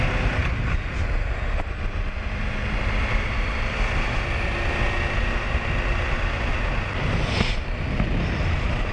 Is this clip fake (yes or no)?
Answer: no